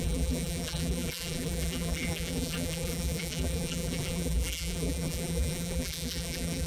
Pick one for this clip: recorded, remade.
remade